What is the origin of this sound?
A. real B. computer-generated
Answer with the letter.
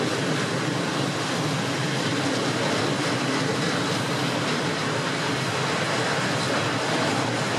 A